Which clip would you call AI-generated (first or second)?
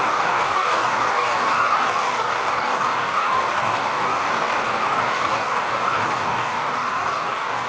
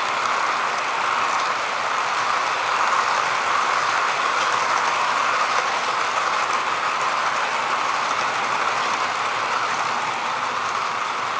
first